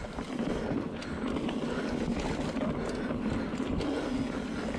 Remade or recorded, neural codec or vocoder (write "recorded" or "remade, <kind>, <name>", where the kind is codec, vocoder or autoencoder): recorded